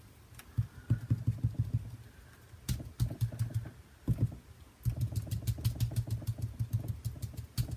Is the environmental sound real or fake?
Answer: real